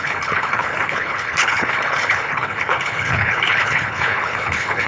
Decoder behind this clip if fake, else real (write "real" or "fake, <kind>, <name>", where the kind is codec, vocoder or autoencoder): fake, codec, HILCodec